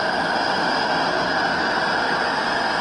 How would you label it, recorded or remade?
recorded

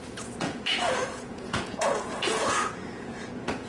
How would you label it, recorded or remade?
remade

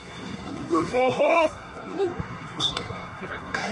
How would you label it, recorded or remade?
remade